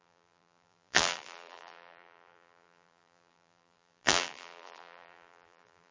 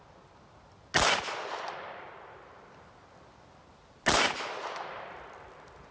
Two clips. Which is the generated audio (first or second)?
first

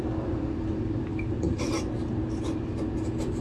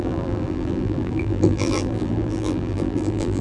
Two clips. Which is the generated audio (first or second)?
second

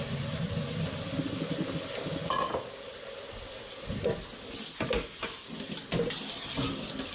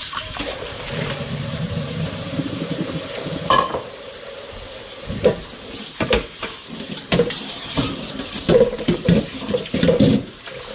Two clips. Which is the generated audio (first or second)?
second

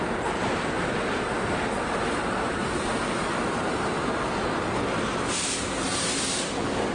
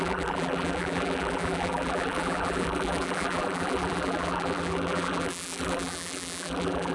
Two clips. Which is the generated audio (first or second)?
second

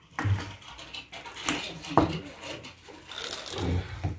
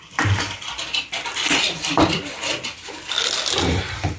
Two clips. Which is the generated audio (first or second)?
second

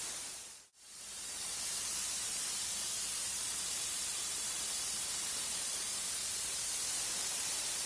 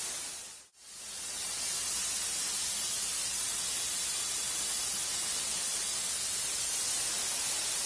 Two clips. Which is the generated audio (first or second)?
first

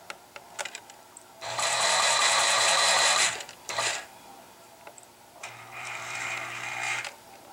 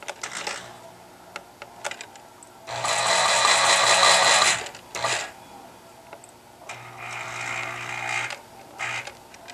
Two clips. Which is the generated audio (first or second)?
first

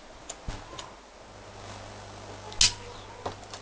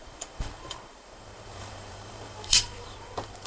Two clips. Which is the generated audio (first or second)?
second